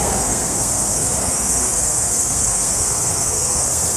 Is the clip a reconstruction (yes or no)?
yes